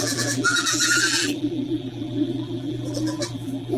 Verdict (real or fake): fake